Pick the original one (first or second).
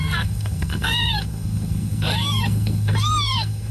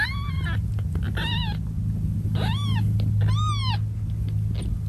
second